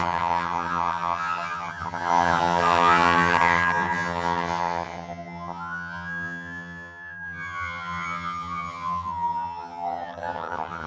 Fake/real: fake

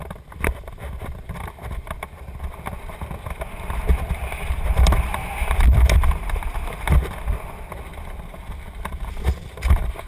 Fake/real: fake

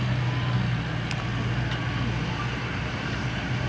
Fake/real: real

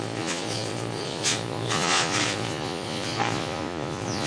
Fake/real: fake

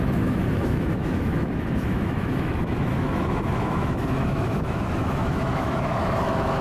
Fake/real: fake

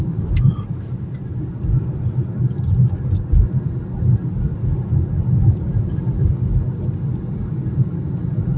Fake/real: real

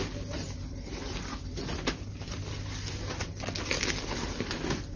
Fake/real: real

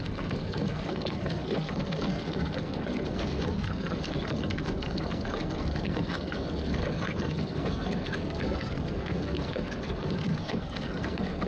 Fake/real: fake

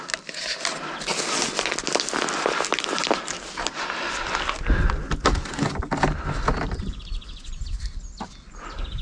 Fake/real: real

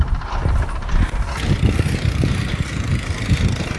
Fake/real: real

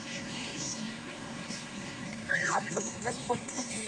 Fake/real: fake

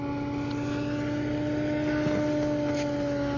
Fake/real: real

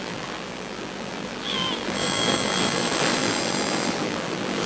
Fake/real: fake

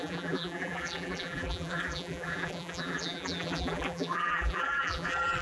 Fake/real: fake